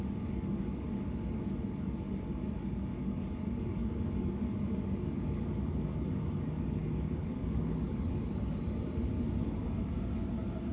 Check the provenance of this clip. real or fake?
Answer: fake